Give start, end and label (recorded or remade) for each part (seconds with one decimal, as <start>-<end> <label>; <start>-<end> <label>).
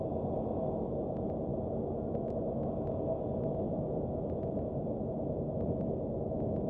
0.0-6.7 recorded